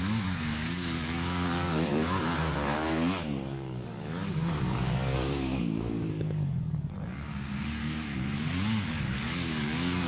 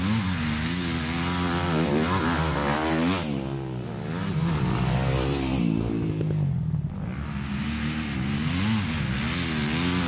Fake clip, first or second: first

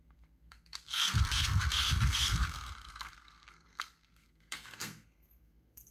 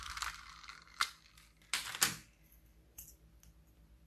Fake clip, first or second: first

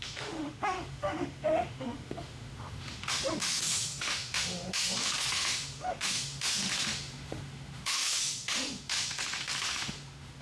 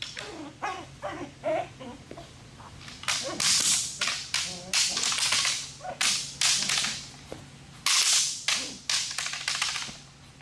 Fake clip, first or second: first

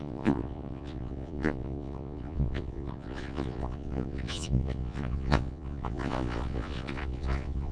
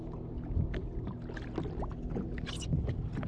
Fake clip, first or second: first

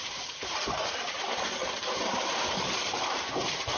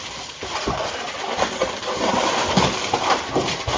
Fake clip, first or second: first